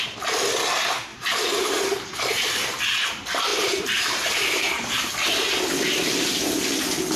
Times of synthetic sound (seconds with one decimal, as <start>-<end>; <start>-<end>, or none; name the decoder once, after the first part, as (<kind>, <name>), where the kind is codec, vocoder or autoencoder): 1.1-2.8 (vocoder, BigVGAN v2); 3.5-5.1